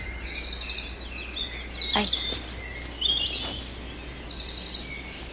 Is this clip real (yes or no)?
yes